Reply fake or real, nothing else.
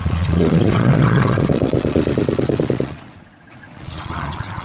fake